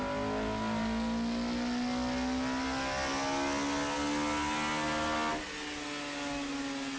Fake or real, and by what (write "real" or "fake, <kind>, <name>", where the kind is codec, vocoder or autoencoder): real